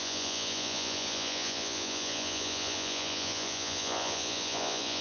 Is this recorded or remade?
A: remade